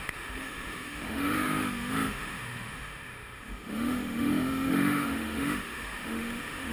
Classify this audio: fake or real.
fake